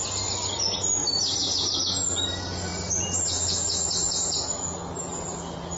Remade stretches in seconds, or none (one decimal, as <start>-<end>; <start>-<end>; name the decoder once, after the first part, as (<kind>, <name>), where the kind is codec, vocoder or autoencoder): 1.0-1.8 (vocoder, BigVGAN v2)